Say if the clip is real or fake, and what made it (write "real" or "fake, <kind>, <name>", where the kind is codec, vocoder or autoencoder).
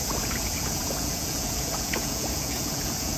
fake, vocoder, Vocos